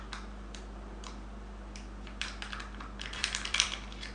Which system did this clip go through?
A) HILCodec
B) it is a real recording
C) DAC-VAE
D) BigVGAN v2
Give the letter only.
D